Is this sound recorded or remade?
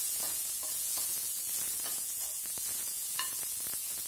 remade